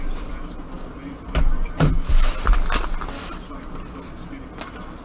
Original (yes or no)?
yes